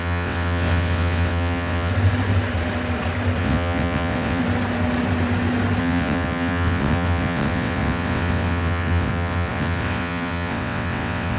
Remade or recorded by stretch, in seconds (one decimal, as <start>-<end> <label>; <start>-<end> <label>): 0.0-1.9 remade; 1.9-3.4 recorded; 3.4-4.4 remade; 4.4-5.8 recorded; 5.8-11.4 remade